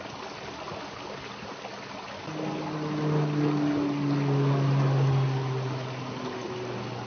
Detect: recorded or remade recorded